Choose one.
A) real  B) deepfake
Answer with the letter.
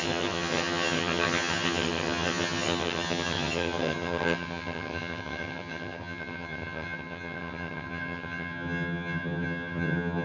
B